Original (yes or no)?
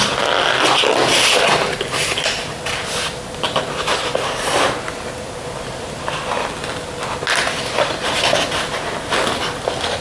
yes